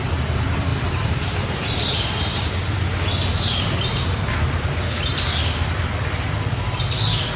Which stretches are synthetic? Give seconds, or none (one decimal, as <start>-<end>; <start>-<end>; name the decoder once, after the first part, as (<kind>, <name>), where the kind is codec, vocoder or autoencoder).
0.7-2.5 (vocoder, BigVGAN v2)